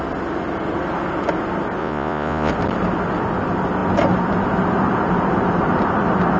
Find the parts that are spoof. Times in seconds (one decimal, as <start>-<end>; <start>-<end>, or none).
1.8-2.5